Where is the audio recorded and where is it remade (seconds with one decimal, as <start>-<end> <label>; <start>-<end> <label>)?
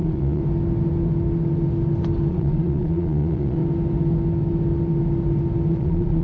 0.0-0.4 remade; 0.4-2.3 recorded; 2.3-3.6 remade; 3.6-5.7 recorded; 5.7-6.2 remade